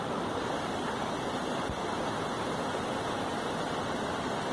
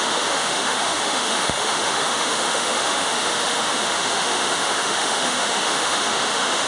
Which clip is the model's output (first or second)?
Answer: second